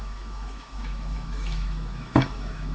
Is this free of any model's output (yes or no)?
no